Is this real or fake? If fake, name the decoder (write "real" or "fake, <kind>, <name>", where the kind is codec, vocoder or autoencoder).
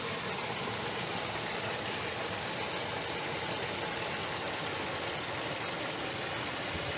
real